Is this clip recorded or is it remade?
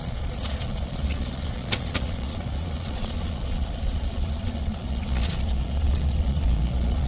remade